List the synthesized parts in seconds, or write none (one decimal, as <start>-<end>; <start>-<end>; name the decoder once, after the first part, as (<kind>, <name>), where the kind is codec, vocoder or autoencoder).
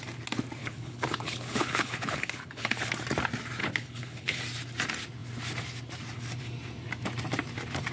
0.6-2.9 (codec, HILCodec); 3.6-4.4